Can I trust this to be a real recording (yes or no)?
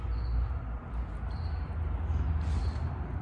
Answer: yes